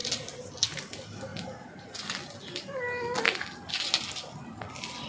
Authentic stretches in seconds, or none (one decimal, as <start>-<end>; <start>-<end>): 0.0-5.1